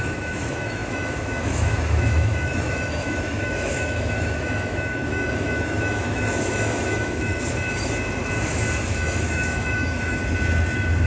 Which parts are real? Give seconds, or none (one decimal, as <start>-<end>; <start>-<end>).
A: 7.3-8.8; 10.2-11.1